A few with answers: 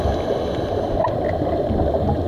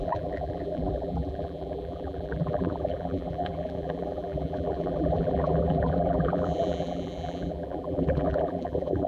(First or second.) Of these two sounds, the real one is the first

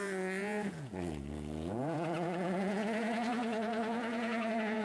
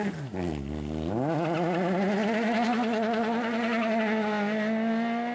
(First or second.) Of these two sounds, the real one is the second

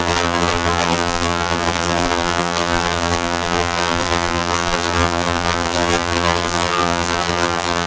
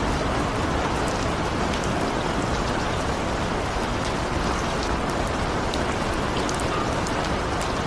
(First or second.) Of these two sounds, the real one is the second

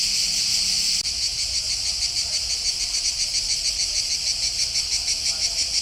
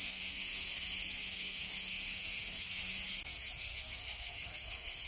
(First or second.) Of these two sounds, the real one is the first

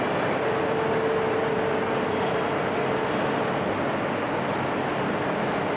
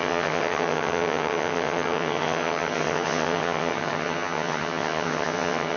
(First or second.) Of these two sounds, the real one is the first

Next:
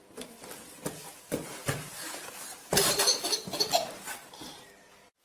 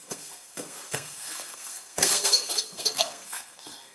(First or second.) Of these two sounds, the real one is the first